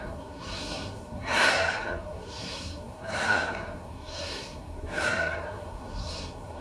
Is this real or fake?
fake